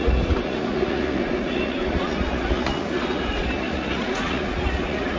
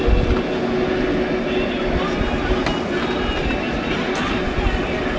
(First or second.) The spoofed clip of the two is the first